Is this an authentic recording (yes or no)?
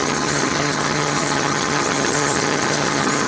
no